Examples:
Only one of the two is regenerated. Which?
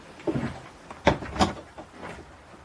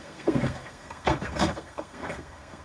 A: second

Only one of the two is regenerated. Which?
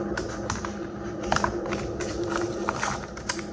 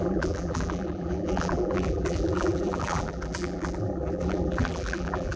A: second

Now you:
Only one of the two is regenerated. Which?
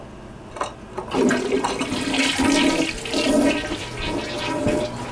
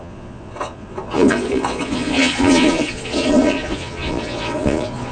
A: second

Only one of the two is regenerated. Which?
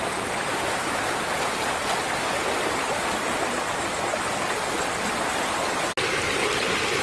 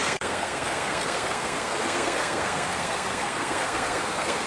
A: second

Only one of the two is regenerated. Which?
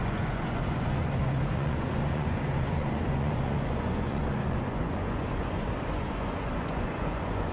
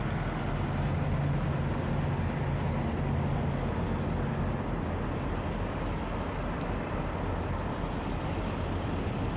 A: first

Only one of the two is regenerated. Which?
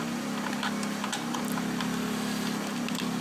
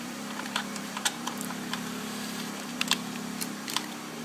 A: second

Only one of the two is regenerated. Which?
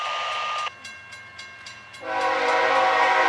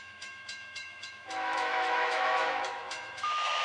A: second